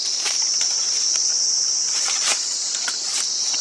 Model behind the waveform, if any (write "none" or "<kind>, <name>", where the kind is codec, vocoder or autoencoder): vocoder, BigVGAN v2